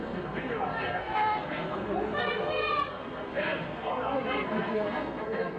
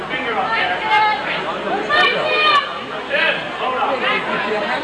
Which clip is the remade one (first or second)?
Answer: first